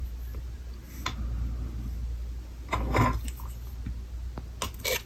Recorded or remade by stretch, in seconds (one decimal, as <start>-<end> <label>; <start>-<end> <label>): 0.0-5.1 recorded